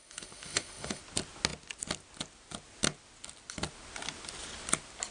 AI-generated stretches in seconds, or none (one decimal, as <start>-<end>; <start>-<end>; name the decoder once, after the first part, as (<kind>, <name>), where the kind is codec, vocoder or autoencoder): 0.0-1.0 (autoencoder, DAC-VAE)